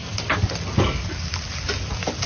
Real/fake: real